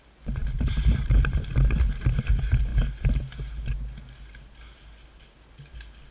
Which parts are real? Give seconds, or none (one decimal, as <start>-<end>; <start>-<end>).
0.0-0.4; 1.6-6.1